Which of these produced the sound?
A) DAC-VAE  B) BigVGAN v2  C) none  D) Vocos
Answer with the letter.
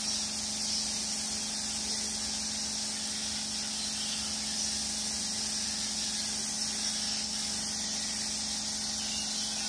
C